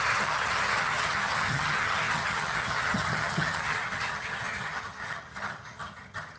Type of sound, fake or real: fake